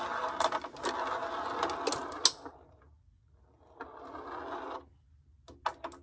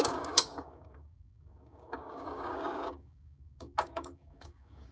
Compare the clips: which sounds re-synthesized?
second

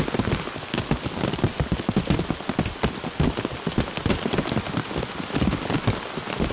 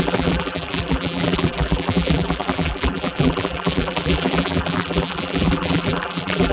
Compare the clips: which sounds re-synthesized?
second